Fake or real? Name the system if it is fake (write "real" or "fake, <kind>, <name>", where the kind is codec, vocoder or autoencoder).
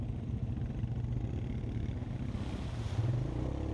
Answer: real